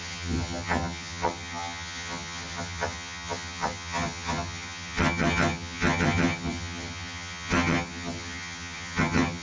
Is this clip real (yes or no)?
no